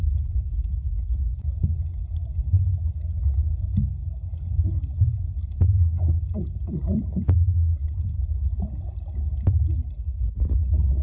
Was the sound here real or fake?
real